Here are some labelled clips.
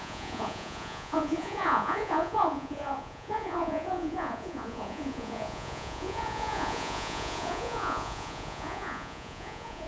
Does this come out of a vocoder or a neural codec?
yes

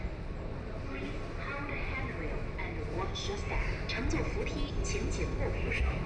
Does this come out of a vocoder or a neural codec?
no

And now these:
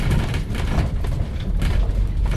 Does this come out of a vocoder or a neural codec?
no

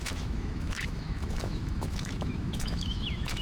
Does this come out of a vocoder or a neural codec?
yes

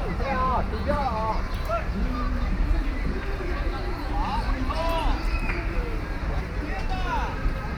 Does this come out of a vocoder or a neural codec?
yes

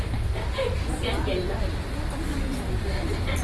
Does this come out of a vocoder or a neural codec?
no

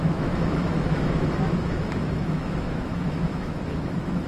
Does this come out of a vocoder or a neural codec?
yes